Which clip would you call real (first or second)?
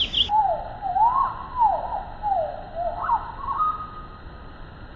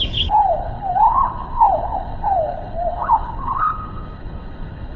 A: first